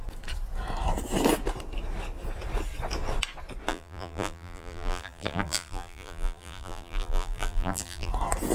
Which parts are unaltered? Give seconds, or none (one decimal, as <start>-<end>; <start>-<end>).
0.0-3.7; 8.1-8.5